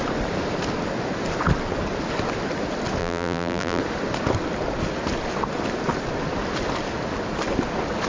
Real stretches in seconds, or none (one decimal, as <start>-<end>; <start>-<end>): 0.0-3.0; 3.8-8.1